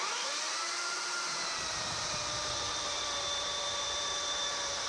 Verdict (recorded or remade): remade